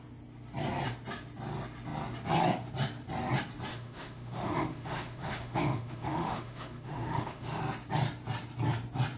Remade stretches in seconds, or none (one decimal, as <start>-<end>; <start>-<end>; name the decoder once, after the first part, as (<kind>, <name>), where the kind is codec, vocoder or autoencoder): 3.7-7.6 (autoencoder, DAC-VAE)

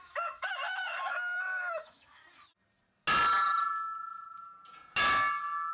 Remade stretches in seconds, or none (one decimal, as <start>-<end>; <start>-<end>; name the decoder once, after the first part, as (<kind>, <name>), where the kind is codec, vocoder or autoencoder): 0.0-2.2 (autoencoder, DAC-VAE)

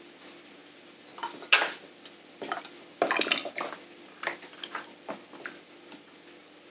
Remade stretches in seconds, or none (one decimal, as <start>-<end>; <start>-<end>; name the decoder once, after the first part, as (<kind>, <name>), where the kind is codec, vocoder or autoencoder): none

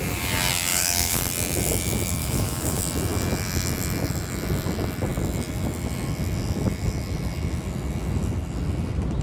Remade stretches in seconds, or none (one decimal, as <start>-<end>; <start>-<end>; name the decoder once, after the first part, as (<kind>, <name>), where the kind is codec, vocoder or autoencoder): 0.7-1.2 (autoencoder, DAC-VAE); 2.2-2.8

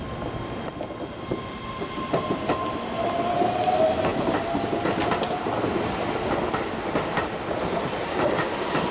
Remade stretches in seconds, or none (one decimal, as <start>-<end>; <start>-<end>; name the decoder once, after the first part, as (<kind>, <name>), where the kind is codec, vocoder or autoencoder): none

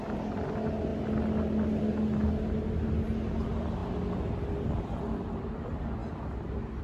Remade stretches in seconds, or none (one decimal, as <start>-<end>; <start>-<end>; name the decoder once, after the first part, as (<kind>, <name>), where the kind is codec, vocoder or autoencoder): none